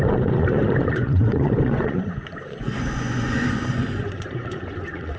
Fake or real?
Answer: fake